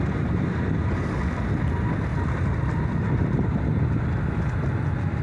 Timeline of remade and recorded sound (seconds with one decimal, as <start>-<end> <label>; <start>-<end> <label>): 0.0-2.1 recorded; 2.1-4.0 remade; 4.0-5.2 recorded

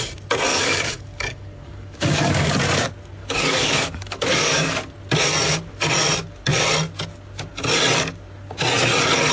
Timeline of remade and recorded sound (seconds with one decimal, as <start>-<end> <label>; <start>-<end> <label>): 0.0-0.5 recorded; 0.5-2.6 remade; 2.6-3.2 recorded; 3.2-4.7 remade; 4.7-9.3 recorded